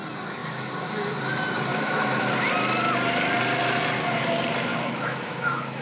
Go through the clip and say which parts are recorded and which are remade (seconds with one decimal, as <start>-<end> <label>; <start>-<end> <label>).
0.0-1.7 recorded; 1.7-2.3 remade; 2.3-4.7 recorded; 4.7-5.8 remade